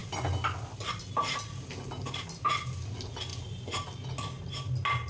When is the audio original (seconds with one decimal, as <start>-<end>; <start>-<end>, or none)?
0.0-5.1